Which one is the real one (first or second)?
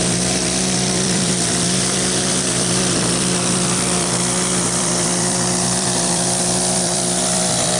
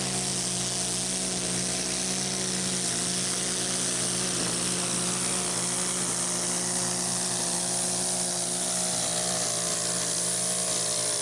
second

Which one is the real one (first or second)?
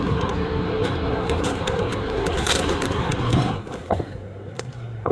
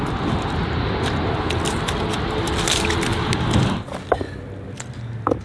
second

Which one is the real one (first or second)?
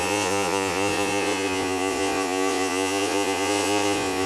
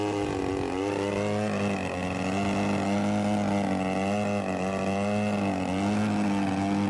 second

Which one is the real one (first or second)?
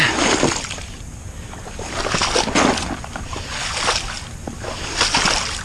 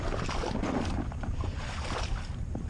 first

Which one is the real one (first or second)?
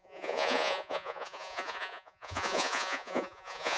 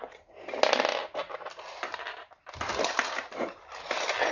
second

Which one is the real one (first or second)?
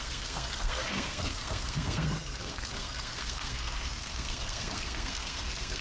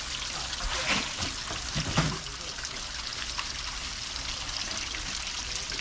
second